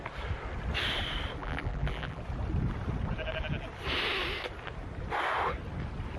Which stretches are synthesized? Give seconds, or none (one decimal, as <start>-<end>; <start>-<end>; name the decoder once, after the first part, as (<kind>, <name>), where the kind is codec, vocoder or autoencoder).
1.4-2.2 (vocoder, BigVGAN v2)